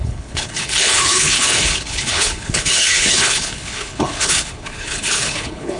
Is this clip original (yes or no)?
no